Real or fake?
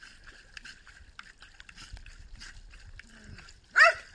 real